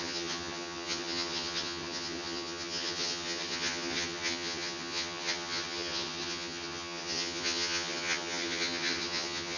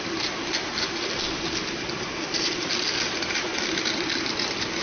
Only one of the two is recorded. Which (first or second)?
second